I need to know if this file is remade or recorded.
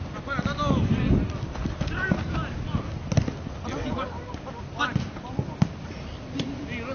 recorded